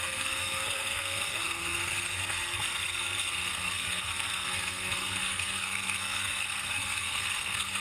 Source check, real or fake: fake